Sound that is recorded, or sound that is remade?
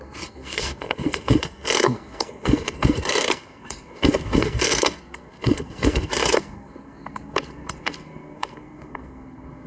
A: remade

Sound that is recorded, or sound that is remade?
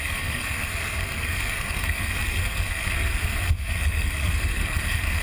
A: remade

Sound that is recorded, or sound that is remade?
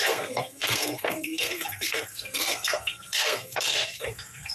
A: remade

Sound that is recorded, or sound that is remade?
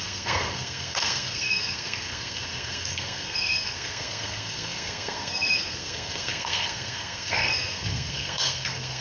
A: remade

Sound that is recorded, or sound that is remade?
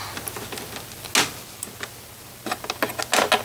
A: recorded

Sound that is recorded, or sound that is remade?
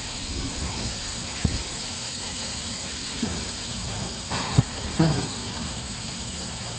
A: remade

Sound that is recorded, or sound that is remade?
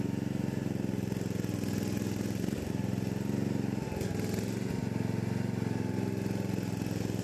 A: recorded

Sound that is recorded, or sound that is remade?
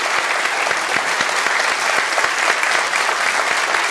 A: recorded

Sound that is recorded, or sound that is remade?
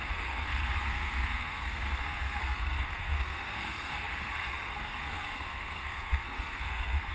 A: remade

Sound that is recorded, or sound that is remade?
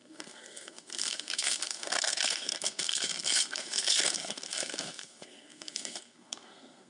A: remade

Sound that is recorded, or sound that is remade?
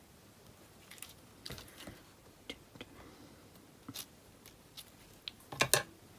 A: recorded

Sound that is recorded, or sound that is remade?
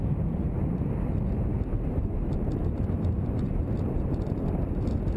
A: recorded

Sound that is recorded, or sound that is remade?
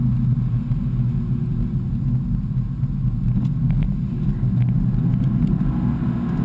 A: recorded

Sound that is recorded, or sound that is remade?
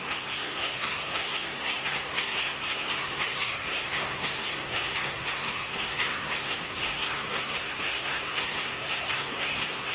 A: remade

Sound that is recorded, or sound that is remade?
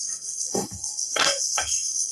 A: remade